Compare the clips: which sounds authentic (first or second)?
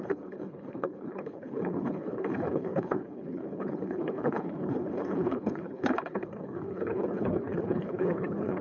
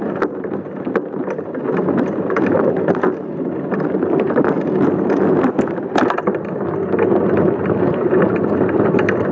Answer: second